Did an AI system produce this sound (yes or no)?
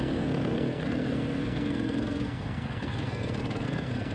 yes